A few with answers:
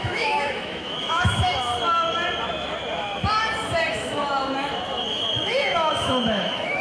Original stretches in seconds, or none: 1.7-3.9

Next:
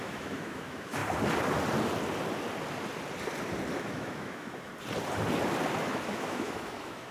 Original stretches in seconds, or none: 1.0-3.8; 4.7-5.8

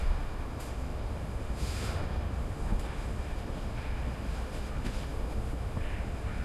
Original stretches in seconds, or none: none

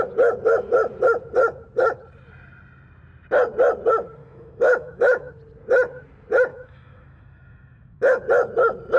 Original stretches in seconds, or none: 0.0-4.2; 5.3-6.5; 8.2-9.0

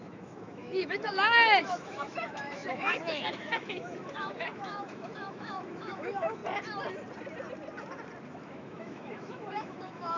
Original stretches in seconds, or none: 6.4-8.3